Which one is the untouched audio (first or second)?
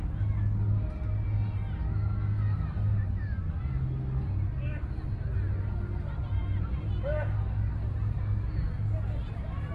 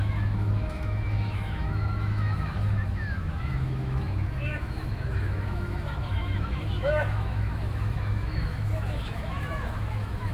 first